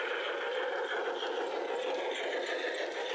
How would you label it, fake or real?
real